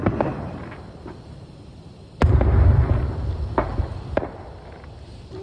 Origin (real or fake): real